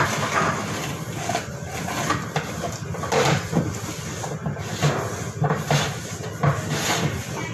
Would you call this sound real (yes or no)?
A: yes